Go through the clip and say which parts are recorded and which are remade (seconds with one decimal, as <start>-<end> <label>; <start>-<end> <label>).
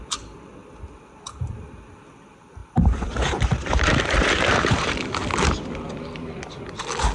0.0-2.6 recorded; 2.6-5.0 remade; 5.0-7.1 recorded